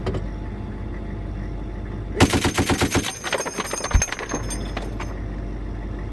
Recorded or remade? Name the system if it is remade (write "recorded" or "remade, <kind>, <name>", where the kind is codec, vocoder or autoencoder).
recorded